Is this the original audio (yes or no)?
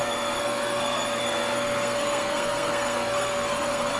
no